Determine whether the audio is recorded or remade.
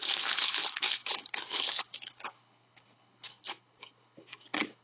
remade